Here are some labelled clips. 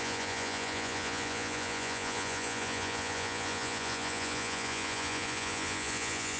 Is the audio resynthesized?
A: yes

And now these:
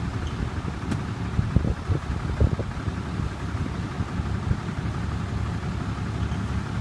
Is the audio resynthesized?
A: no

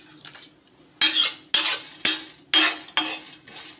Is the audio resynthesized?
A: no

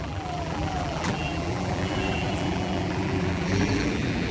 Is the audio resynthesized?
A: yes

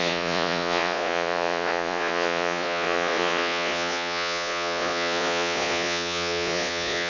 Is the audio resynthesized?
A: yes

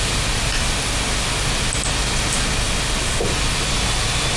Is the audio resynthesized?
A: no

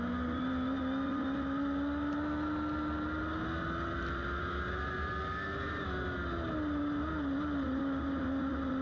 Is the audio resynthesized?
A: no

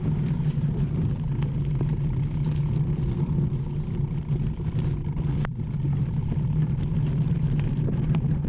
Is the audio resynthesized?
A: no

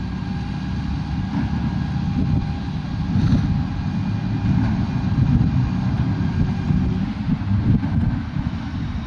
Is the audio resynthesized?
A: no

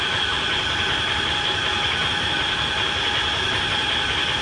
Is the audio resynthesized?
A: no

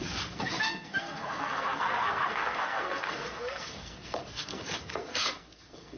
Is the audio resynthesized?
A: yes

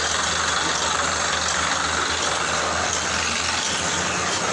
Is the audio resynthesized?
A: no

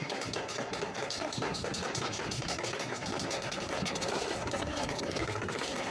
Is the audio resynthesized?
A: yes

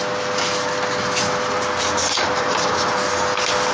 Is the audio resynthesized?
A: no